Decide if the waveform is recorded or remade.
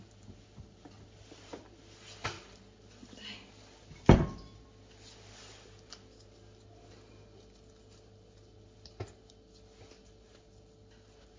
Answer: recorded